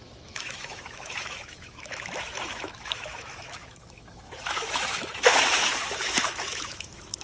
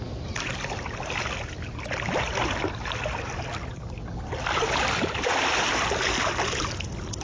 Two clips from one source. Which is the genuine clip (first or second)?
second